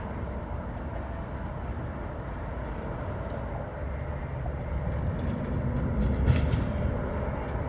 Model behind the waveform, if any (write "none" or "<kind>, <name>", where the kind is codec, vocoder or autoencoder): none